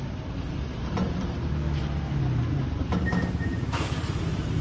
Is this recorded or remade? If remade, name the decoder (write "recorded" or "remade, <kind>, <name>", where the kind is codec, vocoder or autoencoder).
recorded